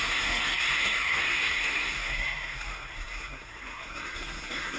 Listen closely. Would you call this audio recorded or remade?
remade